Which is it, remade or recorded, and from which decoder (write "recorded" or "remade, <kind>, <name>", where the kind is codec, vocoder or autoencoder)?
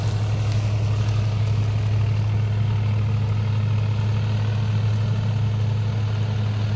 recorded